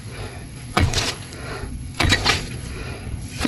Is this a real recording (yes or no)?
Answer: no